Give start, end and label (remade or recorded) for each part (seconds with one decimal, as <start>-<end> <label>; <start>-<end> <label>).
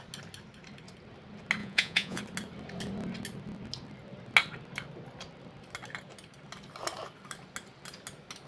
0.0-1.6 recorded; 1.6-2.2 remade; 2.2-8.5 recorded